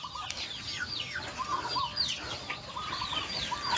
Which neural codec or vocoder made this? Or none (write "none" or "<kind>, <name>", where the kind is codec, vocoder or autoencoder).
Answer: none